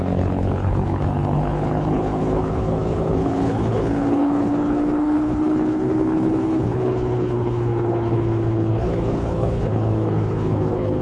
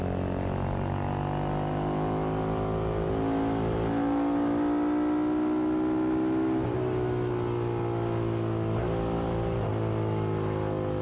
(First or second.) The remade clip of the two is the first